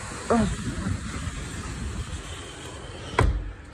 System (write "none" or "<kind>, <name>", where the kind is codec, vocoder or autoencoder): none